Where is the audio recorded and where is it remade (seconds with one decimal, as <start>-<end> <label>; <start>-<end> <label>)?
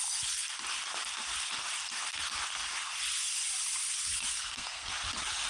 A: 0.0-4.3 recorded; 4.3-4.9 remade; 4.9-5.5 recorded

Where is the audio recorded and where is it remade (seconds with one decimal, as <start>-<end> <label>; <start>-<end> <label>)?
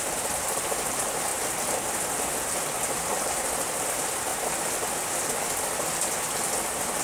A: 0.0-7.0 recorded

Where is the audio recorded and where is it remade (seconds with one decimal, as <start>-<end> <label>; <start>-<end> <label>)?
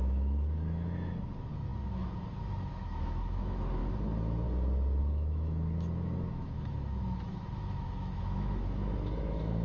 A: 0.0-3.8 remade; 3.8-5.0 recorded; 5.0-9.6 remade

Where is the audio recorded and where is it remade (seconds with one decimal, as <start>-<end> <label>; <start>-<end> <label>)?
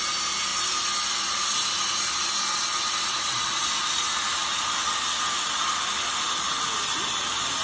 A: 0.0-7.6 recorded